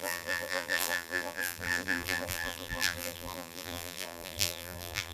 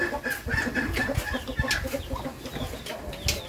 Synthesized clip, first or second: first